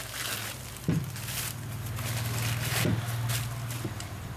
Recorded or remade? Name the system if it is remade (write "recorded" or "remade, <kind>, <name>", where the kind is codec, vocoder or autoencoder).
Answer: recorded